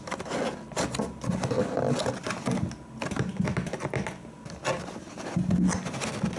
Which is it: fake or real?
real